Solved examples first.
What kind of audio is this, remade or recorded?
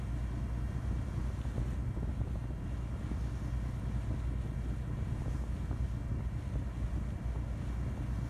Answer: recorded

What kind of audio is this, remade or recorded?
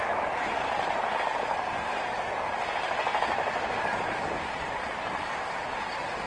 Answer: recorded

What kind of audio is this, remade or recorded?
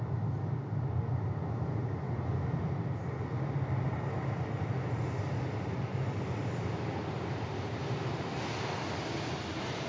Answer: recorded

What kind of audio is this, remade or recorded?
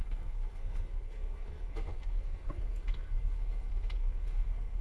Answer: remade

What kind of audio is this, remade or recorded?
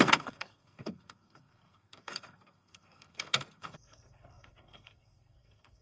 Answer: remade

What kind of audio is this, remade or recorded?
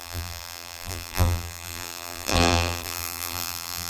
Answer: remade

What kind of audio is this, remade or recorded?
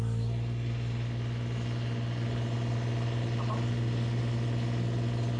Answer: recorded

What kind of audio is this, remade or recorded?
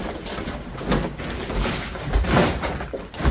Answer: recorded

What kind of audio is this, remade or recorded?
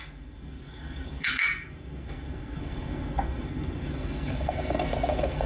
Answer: remade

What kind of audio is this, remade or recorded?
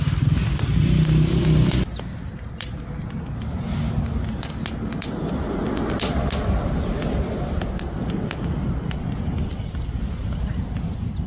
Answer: recorded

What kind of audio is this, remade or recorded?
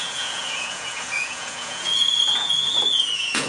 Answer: remade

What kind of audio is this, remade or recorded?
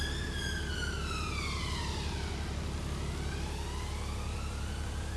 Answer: recorded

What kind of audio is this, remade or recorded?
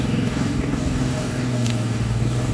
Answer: remade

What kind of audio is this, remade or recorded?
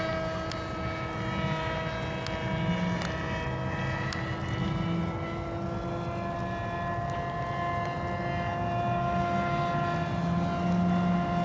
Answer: recorded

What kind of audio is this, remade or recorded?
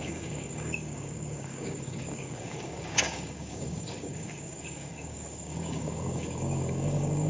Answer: remade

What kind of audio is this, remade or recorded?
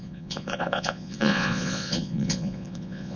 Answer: remade